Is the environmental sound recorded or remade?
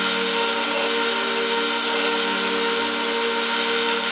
recorded